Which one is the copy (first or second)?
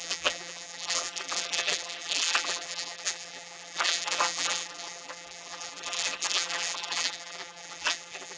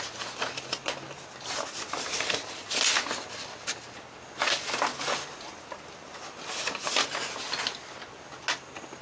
first